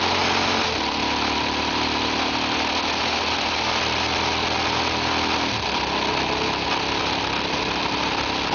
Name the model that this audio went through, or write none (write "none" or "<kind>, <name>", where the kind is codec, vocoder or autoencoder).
none